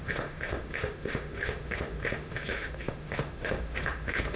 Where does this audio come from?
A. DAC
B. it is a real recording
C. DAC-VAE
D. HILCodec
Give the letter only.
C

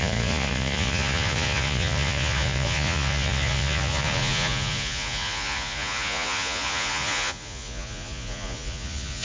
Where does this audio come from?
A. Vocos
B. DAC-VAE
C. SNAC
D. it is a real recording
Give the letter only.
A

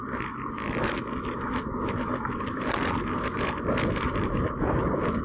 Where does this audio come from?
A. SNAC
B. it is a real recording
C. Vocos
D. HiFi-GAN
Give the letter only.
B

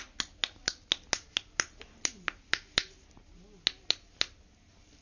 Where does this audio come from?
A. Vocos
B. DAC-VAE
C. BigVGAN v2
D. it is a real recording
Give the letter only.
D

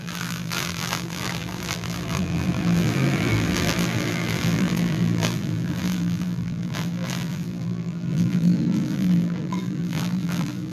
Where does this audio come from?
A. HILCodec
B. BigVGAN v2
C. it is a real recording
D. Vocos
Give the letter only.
B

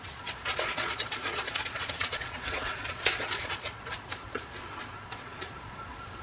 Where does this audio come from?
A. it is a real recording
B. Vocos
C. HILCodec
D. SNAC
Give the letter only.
B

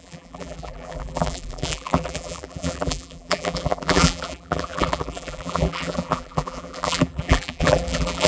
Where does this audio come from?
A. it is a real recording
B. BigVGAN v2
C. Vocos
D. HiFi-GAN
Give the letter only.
B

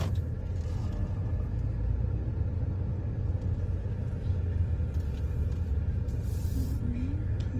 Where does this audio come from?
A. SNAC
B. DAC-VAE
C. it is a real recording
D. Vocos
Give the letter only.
C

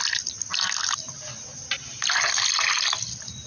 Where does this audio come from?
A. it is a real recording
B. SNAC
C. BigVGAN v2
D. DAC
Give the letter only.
A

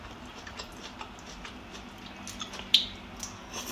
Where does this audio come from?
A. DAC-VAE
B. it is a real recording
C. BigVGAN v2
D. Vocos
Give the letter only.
B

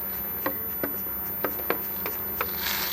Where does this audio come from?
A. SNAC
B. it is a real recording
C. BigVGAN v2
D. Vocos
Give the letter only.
B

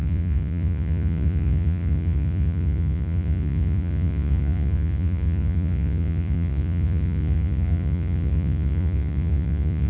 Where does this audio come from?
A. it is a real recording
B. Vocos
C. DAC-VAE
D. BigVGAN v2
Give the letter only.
B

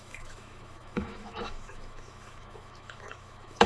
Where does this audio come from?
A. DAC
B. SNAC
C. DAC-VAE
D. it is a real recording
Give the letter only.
C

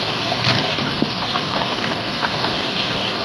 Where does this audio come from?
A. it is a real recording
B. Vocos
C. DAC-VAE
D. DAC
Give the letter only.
D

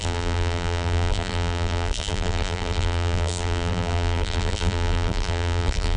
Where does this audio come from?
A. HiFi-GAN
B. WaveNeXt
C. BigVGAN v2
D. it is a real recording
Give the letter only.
C